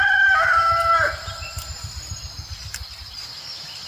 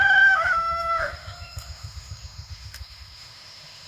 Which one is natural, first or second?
first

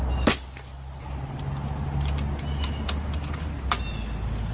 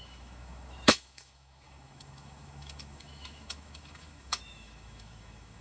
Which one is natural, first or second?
first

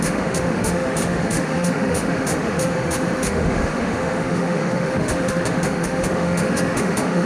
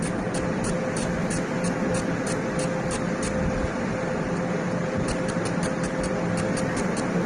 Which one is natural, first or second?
second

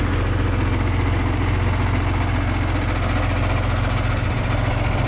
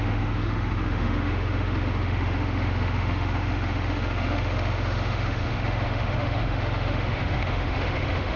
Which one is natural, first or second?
first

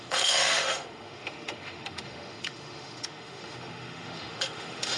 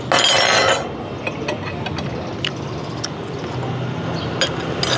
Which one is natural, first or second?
second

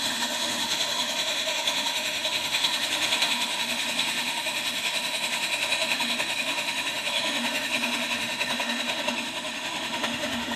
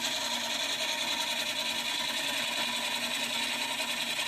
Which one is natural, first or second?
second